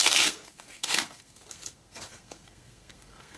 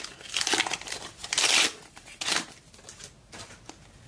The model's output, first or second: first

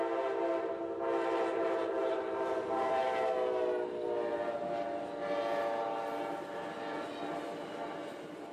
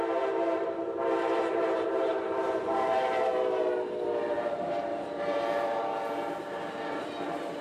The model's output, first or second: second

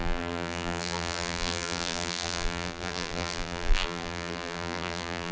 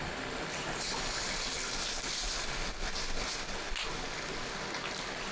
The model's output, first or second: first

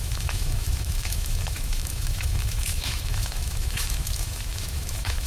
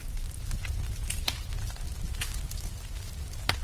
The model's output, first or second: first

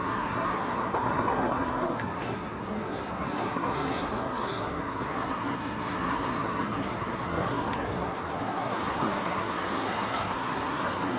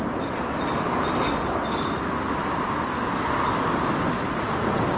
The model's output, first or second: first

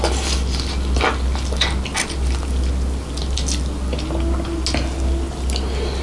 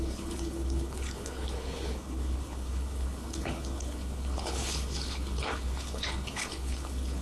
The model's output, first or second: second